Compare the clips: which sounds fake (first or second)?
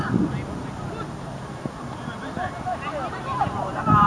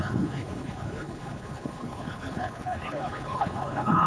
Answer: second